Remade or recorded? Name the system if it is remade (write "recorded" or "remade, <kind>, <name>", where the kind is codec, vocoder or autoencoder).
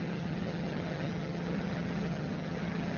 remade, vocoder, HiFi-GAN